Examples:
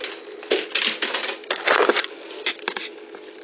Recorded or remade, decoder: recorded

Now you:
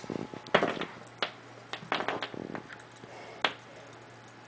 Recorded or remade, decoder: recorded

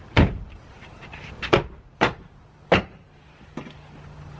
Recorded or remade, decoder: remade, vocoder, BigVGAN v2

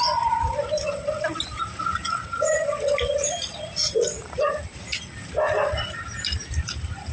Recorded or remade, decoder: remade, vocoder, BigVGAN v2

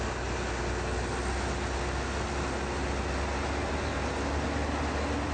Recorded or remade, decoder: recorded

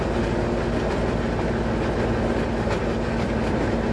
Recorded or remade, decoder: recorded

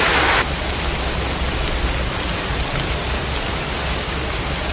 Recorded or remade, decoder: recorded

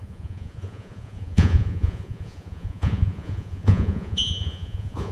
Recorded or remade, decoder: remade, vocoder, Vocos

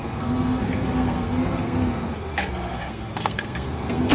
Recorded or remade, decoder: remade, codec, SNAC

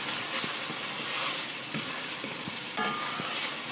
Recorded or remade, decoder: recorded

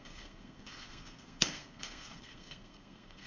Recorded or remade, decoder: remade, codec, SNAC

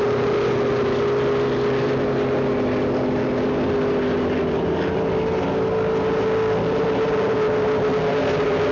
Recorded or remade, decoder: recorded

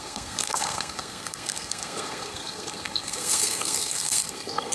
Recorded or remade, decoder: remade, codec, SNAC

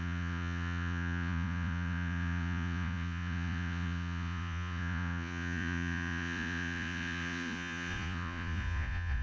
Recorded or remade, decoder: remade, vocoder, Vocos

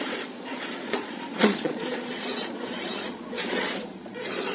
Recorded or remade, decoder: remade, vocoder, Vocos